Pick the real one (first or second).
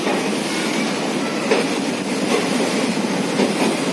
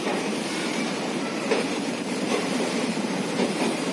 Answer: first